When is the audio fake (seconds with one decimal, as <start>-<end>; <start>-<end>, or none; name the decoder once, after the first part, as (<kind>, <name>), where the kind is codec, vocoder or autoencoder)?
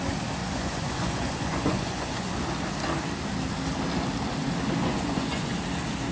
0.4-2.3 (vocoder, Vocos); 4.8-5.6